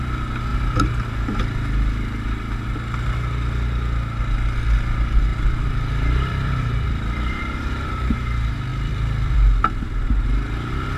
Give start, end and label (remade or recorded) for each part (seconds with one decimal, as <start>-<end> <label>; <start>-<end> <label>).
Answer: 0.0-5.3 recorded; 5.3-8.1 remade; 8.1-8.7 recorded; 8.7-9.6 remade; 9.6-11.0 recorded